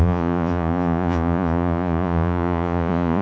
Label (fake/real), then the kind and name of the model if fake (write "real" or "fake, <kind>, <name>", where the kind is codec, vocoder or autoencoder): fake, vocoder, Vocos